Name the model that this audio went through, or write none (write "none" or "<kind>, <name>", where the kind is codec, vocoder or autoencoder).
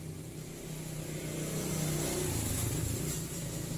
none